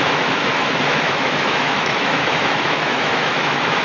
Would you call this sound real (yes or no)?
no